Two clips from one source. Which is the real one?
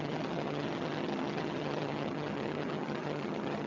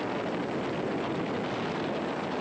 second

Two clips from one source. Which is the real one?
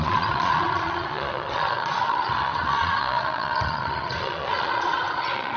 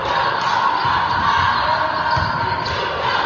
second